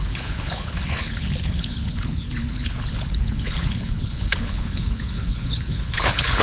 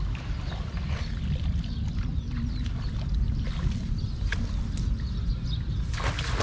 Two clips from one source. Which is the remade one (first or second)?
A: first